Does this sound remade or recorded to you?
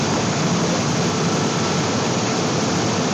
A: recorded